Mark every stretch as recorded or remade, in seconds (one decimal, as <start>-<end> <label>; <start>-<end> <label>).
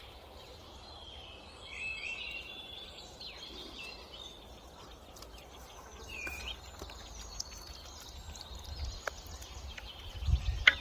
0.0-1.9 recorded; 1.9-3.8 remade; 3.8-5.6 recorded; 5.6-7.0 remade; 7.0-8.2 recorded; 8.2-8.8 remade; 8.8-10.8 recorded